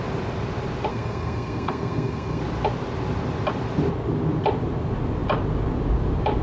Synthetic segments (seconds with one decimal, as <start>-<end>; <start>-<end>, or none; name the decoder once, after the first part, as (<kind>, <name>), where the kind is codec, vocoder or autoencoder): 0.9-2.4 (codec, SNAC)